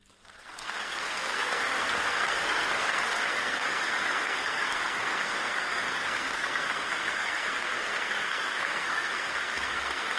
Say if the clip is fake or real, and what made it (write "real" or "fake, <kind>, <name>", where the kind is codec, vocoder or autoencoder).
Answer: fake, codec, SNAC